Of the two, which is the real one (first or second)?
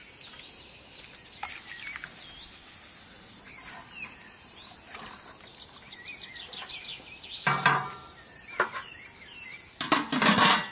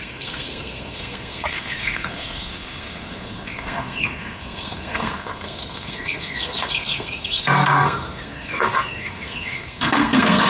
first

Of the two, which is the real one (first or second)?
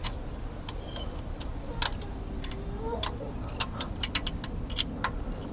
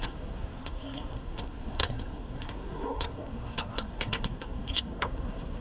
first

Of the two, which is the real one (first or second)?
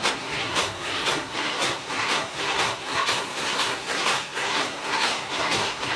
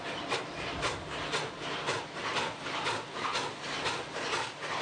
second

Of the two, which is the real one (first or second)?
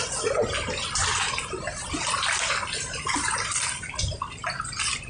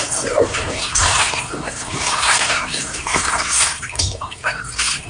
first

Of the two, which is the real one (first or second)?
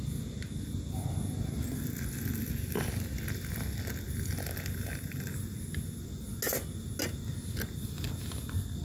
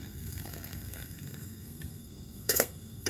first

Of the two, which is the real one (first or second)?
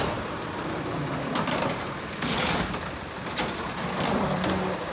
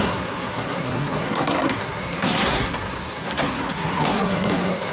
first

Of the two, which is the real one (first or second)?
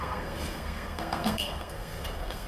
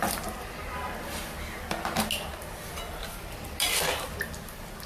second